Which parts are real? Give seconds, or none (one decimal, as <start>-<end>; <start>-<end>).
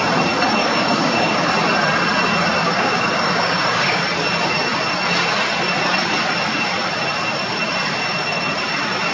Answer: 0.0-0.6; 1.5-2.6; 4.0-9.1